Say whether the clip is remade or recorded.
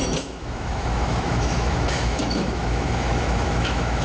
remade